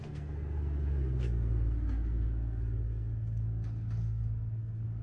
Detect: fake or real fake